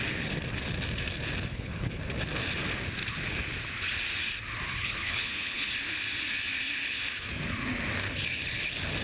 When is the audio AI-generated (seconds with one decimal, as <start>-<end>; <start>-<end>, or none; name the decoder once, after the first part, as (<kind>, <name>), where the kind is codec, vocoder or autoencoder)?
1.5-2.0 (codec, HILCodec); 4.7-5.7